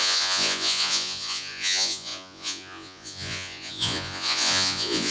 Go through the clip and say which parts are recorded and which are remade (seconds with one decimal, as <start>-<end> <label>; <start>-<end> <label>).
0.0-5.1 remade